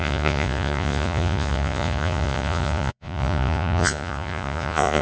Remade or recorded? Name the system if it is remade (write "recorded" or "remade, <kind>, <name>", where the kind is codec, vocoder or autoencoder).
remade, vocoder, Vocos